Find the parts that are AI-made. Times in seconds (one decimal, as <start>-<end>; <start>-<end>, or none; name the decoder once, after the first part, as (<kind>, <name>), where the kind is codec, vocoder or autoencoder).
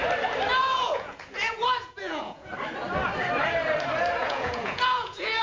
0.6-2.5 (vocoder, Vocos); 4.2-5.4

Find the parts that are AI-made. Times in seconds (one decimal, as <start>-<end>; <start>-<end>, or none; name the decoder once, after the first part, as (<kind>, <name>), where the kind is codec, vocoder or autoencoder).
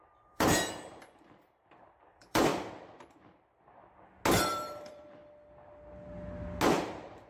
0.0-2.5 (vocoder, BigVGAN v2); 3.0-3.8; 4.3-5.2; 6.8-7.3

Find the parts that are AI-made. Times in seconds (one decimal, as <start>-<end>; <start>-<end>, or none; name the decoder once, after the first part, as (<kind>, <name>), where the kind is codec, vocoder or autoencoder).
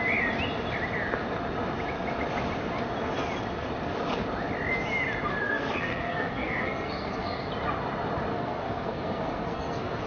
5.4-7.5 (codec, SNAC); 8.3-10.1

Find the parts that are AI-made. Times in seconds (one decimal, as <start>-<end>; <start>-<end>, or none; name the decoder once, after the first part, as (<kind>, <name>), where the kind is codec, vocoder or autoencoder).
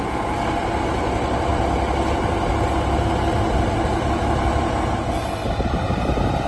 none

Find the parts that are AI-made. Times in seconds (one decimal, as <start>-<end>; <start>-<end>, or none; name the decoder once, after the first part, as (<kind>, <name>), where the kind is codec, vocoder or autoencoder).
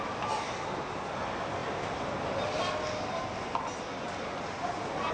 none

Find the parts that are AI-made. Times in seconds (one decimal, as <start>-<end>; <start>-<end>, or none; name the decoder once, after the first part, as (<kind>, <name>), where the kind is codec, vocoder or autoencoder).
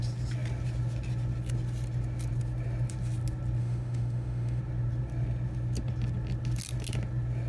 3.6-4.6 (autoencoder, DAC-VAE)